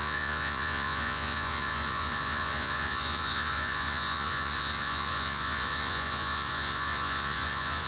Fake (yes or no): yes